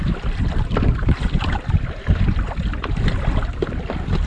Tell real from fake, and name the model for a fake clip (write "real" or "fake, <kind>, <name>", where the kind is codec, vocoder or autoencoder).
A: real